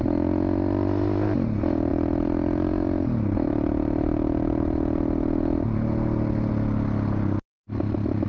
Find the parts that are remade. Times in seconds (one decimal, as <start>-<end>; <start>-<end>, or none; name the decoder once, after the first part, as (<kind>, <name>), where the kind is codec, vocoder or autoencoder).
none